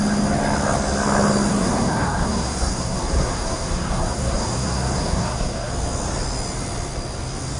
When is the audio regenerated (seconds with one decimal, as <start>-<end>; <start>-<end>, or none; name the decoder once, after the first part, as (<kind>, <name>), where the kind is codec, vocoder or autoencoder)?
1.5-5.7 (codec, SNAC)